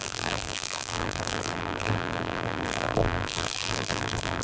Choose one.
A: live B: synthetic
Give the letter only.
B